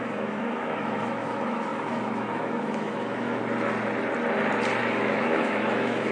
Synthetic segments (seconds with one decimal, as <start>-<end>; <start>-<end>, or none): 0.0-3.4; 4.8-6.1